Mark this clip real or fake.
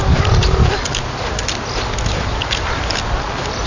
real